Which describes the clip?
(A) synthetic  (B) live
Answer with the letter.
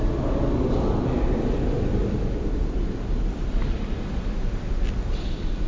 B